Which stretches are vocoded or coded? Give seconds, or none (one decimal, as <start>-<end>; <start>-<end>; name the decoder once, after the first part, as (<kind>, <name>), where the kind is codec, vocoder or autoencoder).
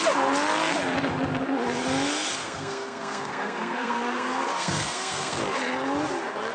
2.4-5.4 (codec, SNAC)